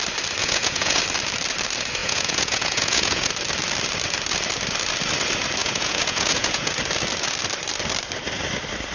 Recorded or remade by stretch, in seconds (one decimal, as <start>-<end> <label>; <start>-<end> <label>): 0.0-0.4 recorded; 0.4-1.0 remade; 1.0-2.0 recorded; 2.0-3.3 remade; 3.3-5.6 recorded; 5.6-6.7 remade; 6.7-8.9 recorded